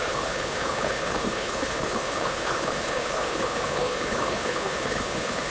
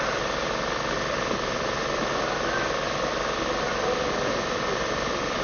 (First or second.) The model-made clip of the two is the first